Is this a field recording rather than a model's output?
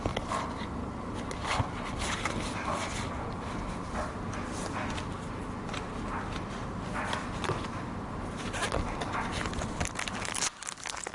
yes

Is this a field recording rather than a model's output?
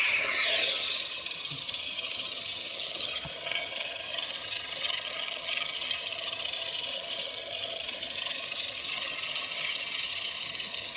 no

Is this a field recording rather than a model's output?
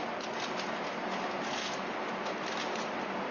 yes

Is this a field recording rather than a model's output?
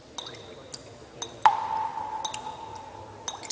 yes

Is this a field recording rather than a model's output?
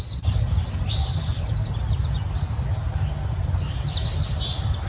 yes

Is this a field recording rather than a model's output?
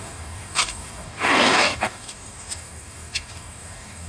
no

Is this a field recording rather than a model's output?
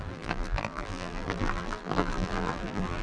no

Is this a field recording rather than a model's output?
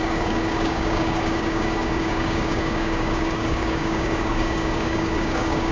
no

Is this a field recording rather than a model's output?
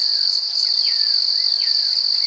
yes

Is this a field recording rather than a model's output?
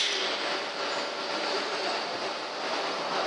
yes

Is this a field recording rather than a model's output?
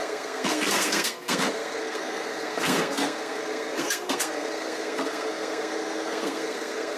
no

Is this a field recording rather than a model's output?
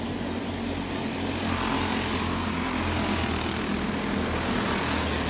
yes